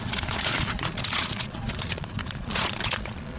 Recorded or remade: remade